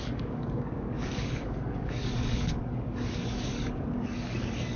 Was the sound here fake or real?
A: fake